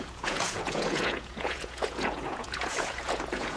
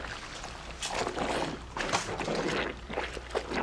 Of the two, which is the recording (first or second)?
second